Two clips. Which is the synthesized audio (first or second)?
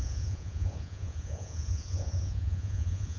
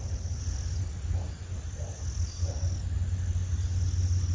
first